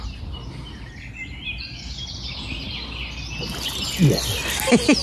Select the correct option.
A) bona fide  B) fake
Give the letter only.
A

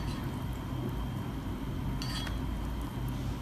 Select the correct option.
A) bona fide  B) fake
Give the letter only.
A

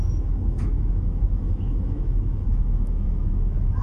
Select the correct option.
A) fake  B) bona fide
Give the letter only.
A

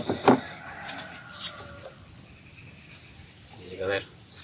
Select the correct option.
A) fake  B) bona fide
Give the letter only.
B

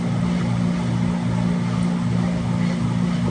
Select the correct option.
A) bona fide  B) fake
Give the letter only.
A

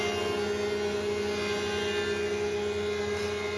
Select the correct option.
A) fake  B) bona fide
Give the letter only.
B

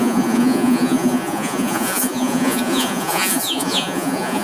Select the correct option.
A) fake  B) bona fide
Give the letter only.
A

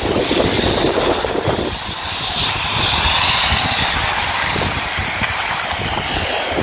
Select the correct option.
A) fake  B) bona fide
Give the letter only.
B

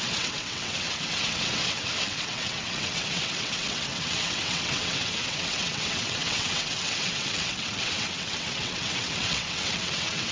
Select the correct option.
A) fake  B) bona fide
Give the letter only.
A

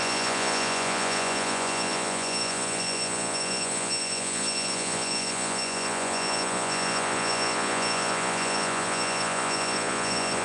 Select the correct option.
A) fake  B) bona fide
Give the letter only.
A